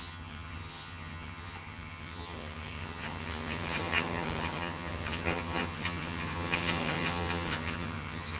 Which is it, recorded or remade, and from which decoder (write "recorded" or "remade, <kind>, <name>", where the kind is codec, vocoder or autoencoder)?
remade, vocoder, HiFi-GAN